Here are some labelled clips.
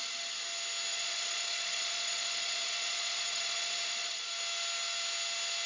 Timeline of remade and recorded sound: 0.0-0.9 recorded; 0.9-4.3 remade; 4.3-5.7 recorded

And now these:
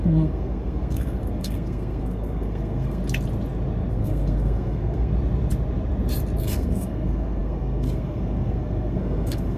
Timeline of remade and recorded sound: 0.0-3.0 remade; 3.0-3.9 recorded; 3.9-5.1 remade; 5.1-6.4 recorded; 6.4-9.6 remade

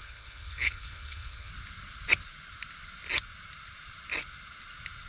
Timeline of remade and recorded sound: 0.0-1.5 remade; 1.5-5.1 recorded

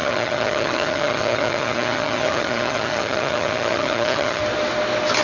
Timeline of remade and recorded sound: 0.0-4.4 remade; 4.4-5.2 recorded

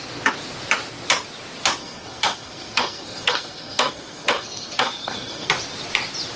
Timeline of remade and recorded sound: 0.0-1.8 recorded; 1.8-5.5 remade; 5.5-6.4 recorded

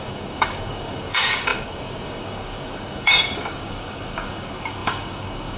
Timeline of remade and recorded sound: 0.0-5.6 remade